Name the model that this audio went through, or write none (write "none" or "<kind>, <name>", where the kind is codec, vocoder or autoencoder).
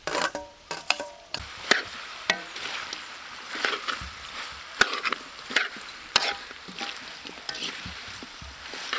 vocoder, BigVGAN v2